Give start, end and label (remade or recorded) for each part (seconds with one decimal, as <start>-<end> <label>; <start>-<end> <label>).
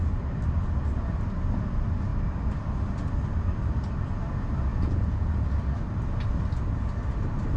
0.0-4.7 recorded; 4.7-5.4 remade; 5.4-7.6 recorded